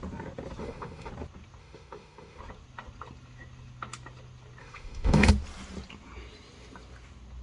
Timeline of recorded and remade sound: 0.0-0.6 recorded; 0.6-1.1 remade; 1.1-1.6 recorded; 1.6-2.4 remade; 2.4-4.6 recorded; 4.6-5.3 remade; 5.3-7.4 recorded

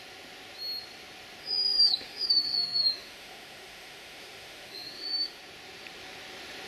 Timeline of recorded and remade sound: 0.0-1.4 recorded; 1.4-5.4 remade; 5.4-6.7 recorded

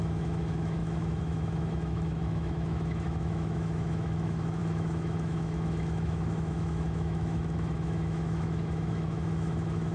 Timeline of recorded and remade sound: 0.0-9.9 remade

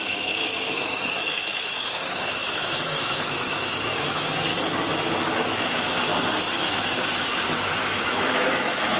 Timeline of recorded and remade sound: 0.0-4.5 remade; 4.5-5.2 recorded; 5.2-6.1 remade; 6.1-7.7 recorded; 7.7-9.0 remade

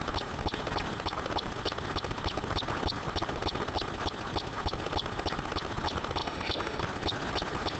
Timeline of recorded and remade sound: 0.0-6.2 recorded; 6.2-6.8 remade; 6.8-7.8 recorded

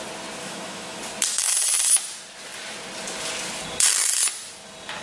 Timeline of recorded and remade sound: 0.0-0.4 recorded; 0.4-1.0 remade; 1.0-5.0 recorded

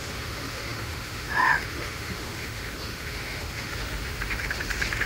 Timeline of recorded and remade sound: 0.0-5.1 remade

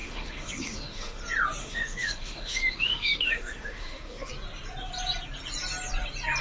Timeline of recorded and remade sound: 0.0-1.2 remade; 1.2-1.6 recorded; 1.6-4.3 remade; 4.3-6.4 recorded